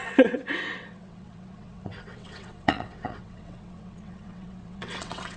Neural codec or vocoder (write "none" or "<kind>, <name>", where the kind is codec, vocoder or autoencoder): vocoder, WaveNeXt